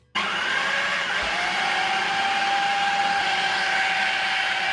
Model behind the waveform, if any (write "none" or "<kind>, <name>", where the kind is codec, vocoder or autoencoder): none